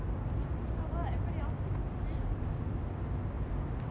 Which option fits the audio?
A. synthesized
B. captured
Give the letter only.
B